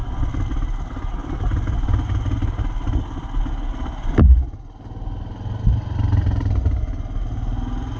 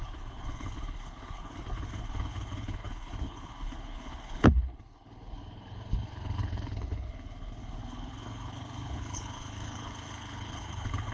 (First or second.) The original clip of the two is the first